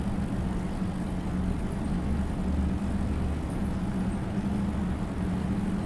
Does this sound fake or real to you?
real